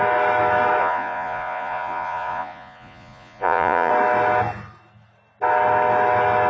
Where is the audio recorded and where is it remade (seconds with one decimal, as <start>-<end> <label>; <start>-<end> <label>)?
0.0-0.8 recorded; 0.8-3.9 remade; 3.9-6.5 recorded